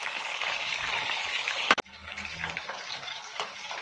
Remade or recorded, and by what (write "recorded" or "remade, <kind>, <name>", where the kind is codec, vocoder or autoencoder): remade, codec, DAC